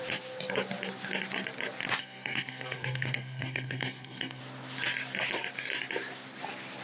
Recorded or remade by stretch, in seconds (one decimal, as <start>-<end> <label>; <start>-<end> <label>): 0.0-2.0 recorded; 2.0-4.4 remade; 4.4-6.8 recorded